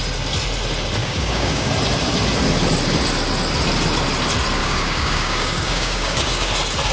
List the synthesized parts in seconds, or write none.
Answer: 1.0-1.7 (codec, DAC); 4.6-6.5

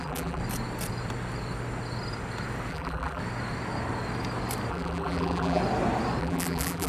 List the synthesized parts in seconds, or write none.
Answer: 0.0-0.4 (vocoder, BigVGAN v2); 2.7-3.2; 4.7-5.6; 6.2-6.9

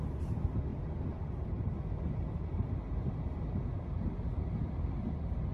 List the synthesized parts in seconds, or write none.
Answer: none